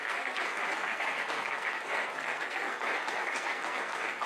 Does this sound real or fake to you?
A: fake